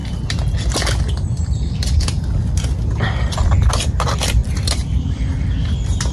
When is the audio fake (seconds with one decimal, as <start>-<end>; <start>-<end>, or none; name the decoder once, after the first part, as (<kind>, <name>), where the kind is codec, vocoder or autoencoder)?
4.4-5.2 (vocoder, BigVGAN v2)

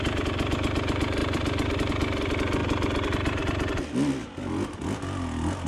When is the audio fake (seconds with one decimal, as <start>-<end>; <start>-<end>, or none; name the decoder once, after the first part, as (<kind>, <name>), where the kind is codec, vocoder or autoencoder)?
1.2-1.9 (vocoder, BigVGAN v2)

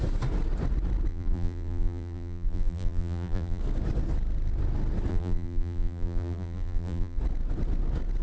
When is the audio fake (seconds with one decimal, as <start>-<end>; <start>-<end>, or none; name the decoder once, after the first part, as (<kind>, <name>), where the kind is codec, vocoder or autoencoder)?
1.1-3.6 (vocoder, BigVGAN v2); 5.1-7.2

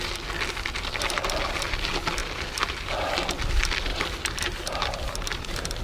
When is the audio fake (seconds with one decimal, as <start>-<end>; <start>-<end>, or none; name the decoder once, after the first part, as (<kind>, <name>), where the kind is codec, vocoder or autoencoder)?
3.9-5.8 (vocoder, BigVGAN v2)

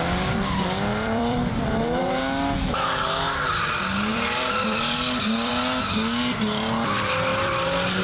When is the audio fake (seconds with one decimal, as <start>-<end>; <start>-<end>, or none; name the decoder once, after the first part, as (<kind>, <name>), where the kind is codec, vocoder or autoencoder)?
0.9-2.2 (vocoder, BigVGAN v2); 4.1-5.5; 7.3-8.0

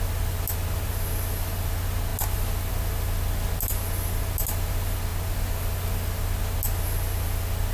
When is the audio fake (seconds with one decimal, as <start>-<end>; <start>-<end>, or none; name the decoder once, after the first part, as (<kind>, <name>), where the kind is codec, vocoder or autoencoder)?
none

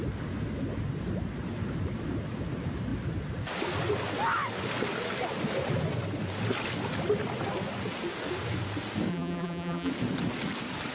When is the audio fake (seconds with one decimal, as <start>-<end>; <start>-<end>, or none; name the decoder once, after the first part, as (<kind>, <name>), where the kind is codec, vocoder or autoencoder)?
9.1-9.9 (vocoder, BigVGAN v2)